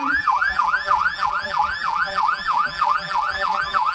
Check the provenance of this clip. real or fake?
fake